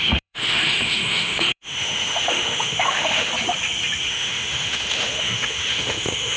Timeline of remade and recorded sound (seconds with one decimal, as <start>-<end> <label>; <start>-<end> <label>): 0.0-3.3 remade; 3.3-4.0 recorded; 4.0-6.4 remade